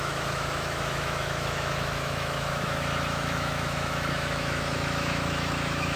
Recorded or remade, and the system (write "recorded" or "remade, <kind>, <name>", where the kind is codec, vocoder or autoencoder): remade, autoencoder, DAC-VAE